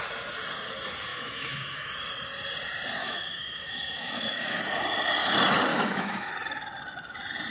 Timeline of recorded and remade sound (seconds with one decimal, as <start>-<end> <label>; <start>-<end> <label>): 0.0-1.1 recorded; 1.1-1.9 remade; 1.9-3.0 recorded; 3.0-4.6 remade; 4.6-5.7 recorded; 5.7-6.3 remade; 6.3-7.5 recorded